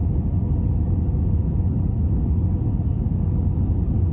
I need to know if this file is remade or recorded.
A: recorded